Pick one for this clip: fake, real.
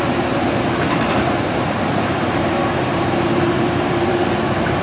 fake